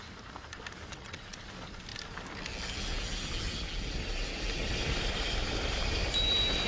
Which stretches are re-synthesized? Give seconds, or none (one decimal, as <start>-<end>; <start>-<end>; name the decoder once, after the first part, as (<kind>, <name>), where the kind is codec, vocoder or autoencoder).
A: 0.9-1.5 (vocoder, WaveNeXt)